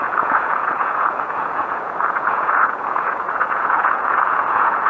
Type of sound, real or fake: fake